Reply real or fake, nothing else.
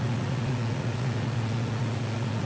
fake